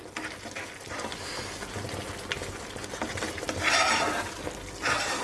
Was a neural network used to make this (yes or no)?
no